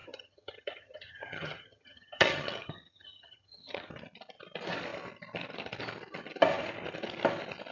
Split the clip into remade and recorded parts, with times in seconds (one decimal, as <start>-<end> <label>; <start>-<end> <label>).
0.0-3.9 remade; 3.9-7.7 recorded

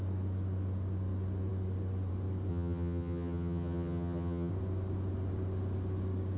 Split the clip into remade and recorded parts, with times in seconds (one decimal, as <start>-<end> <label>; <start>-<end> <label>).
0.0-2.5 recorded; 2.5-4.5 remade; 4.5-6.4 recorded

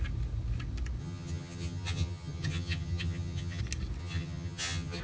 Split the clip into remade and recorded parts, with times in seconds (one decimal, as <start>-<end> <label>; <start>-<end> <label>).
0.0-1.0 recorded; 1.0-3.6 remade; 3.6-4.0 recorded; 4.0-5.0 remade

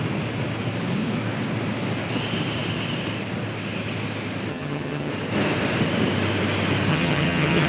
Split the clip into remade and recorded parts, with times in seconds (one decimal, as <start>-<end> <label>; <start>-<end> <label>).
0.0-4.5 recorded; 4.5-5.1 remade; 5.1-6.9 recorded; 6.9-7.7 remade